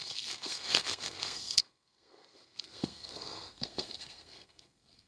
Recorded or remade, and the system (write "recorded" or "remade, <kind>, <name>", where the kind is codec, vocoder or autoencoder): remade, codec, SNAC